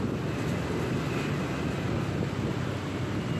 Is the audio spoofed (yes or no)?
no